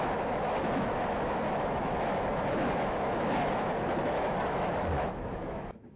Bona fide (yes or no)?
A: no